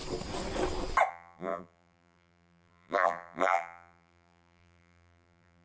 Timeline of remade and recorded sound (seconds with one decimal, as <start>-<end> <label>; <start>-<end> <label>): 0.0-1.1 recorded; 1.1-5.6 remade